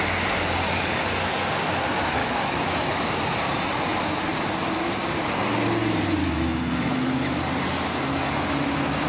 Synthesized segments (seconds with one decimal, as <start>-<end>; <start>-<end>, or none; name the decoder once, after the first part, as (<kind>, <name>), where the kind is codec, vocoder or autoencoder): 2.2-3.0 (autoencoder, DAC-VAE); 6.2-7.4